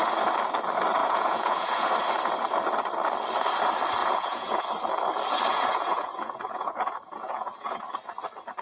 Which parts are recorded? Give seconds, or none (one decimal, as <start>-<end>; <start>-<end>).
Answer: 0.0-1.0; 1.9-4.0; 4.6-5.5; 7.8-8.6